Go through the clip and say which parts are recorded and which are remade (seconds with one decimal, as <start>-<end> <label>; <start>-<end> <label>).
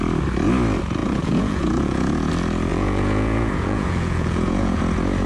0.0-1.0 recorded; 1.0-2.3 remade; 2.3-2.7 recorded; 2.7-4.8 remade; 4.8-5.3 recorded